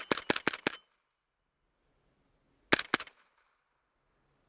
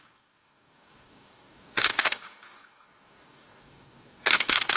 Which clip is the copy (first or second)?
second